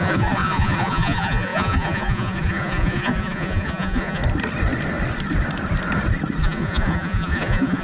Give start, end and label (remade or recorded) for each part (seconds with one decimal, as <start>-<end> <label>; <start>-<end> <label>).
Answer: 0.0-4.2 remade; 4.2-6.4 recorded; 6.4-7.8 remade